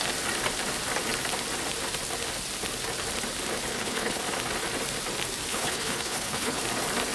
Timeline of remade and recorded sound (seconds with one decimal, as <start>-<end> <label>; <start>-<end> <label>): 0.0-3.7 recorded; 3.7-4.2 remade; 4.2-5.5 recorded; 5.5-6.6 remade; 6.6-7.1 recorded